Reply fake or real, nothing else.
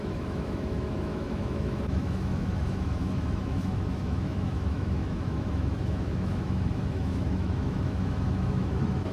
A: fake